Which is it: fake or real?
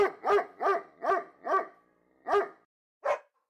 real